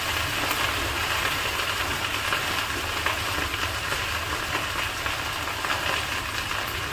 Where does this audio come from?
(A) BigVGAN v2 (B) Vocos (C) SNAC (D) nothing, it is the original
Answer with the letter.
D